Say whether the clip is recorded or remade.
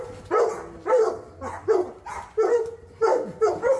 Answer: recorded